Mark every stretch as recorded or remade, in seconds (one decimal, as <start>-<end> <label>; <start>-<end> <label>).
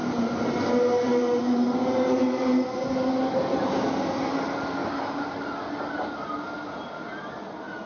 0.0-0.5 remade; 0.5-4.8 recorded; 4.8-5.5 remade; 5.5-7.9 recorded